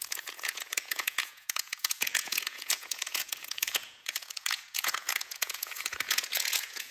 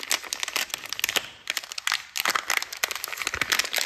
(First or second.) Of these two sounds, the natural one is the second